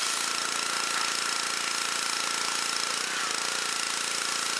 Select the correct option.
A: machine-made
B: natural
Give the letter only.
B